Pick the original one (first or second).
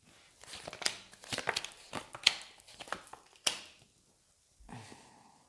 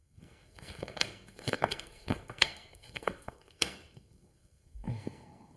first